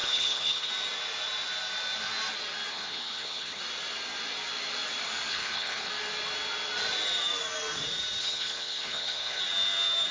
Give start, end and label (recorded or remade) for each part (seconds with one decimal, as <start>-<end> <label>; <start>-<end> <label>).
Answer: 0.0-0.7 remade; 0.7-2.7 recorded; 2.7-3.6 remade; 3.6-5.3 recorded; 5.3-5.9 remade; 5.9-8.2 recorded; 8.2-9.4 remade; 9.4-10.1 recorded

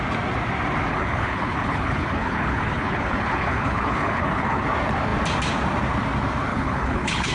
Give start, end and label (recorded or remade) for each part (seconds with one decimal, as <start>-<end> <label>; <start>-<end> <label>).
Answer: 0.0-0.9 recorded; 0.9-4.6 remade; 4.6-6.5 recorded; 6.5-7.3 remade

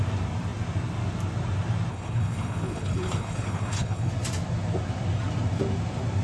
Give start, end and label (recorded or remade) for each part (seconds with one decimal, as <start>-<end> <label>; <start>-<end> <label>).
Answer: 0.0-1.9 recorded; 1.9-4.1 remade; 4.1-6.2 recorded

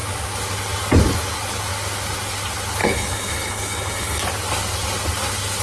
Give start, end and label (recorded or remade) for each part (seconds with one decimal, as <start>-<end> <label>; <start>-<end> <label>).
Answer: 0.0-2.8 recorded; 2.8-4.2 remade; 4.2-5.6 recorded

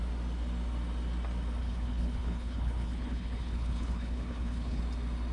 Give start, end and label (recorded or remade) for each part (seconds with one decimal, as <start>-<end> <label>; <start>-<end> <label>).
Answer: 0.0-1.6 recorded; 1.6-4.8 remade; 4.8-5.3 recorded